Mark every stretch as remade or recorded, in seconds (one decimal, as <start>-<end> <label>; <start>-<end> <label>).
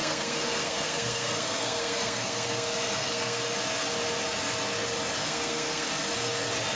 0.0-3.4 remade; 3.4-5.2 recorded; 5.2-5.9 remade; 5.9-6.8 recorded